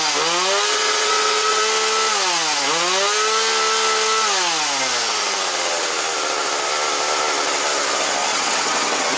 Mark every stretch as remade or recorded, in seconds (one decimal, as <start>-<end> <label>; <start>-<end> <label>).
0.0-0.7 recorded; 0.7-1.6 remade; 1.6-8.3 recorded; 8.3-9.2 remade